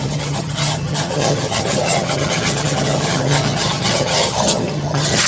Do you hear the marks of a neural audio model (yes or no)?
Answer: yes